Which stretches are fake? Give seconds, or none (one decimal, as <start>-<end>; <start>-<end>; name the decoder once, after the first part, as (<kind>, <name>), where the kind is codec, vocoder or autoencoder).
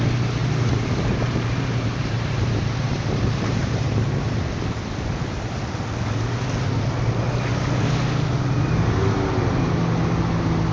0.4-4.1 (vocoder, BigVGAN v2)